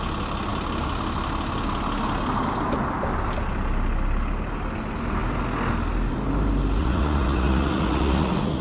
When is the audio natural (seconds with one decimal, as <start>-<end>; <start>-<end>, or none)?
0.0-6.8